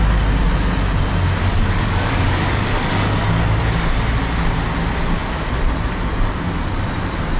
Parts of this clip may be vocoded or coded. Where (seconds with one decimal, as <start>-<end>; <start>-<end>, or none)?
1.4-3.6